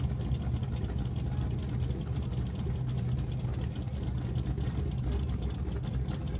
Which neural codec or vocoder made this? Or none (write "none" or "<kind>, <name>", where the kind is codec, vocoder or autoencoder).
none